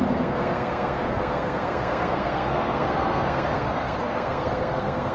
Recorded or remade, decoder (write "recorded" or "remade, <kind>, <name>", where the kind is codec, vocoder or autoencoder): remade, codec, SNAC